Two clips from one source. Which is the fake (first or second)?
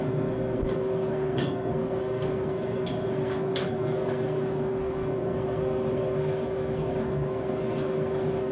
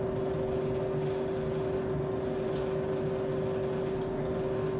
first